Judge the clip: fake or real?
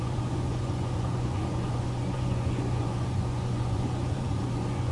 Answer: fake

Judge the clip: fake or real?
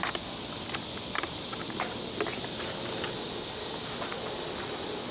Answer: real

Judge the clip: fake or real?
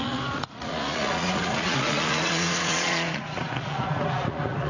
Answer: fake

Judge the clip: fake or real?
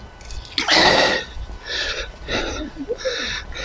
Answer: real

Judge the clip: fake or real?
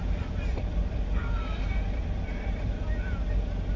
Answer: fake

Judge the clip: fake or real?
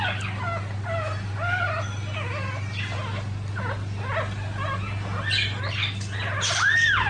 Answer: real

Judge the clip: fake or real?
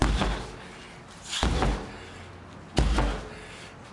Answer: real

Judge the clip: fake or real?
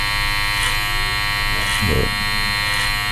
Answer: real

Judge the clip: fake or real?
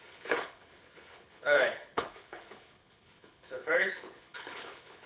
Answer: fake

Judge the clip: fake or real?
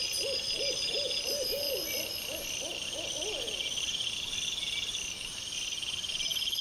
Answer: real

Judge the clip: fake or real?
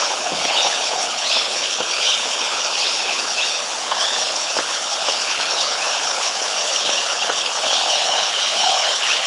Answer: fake